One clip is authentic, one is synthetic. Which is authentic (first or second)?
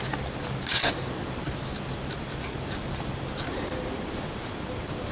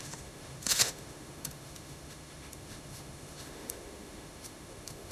first